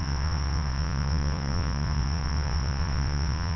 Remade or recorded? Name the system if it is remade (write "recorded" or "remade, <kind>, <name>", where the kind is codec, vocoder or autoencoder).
remade, vocoder, WaveNeXt